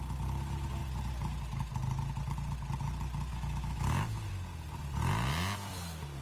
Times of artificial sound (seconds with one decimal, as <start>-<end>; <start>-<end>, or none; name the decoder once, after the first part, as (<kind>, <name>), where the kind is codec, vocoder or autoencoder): 3.3-4.3 (autoencoder, DAC-VAE)